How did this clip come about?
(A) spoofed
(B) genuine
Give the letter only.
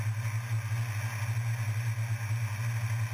B